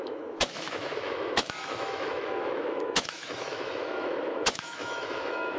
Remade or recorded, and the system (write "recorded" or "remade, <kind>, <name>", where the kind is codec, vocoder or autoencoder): remade, autoencoder, DAC-VAE